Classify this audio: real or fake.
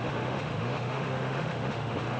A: fake